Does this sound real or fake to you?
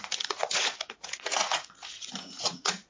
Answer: fake